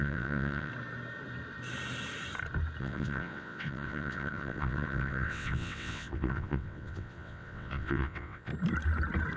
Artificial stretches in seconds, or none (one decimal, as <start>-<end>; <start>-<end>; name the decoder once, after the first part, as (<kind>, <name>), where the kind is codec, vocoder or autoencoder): 0.0-0.7 (vocoder, WaveNeXt); 2.8-8.5